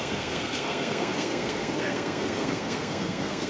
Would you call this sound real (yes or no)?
no